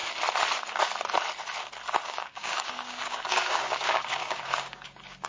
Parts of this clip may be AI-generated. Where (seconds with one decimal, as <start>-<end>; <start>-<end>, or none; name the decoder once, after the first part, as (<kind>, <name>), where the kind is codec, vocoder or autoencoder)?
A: 2.0-5.3 (codec, DAC)